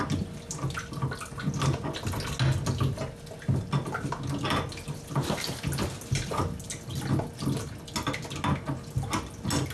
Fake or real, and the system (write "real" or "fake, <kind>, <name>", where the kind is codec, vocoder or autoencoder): real